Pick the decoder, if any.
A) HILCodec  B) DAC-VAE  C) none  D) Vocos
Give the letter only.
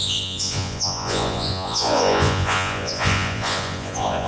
D